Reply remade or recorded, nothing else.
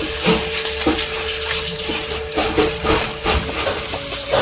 recorded